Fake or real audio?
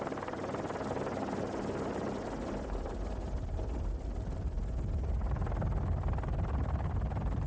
real